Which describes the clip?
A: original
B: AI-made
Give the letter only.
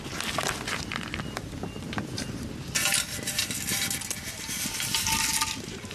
A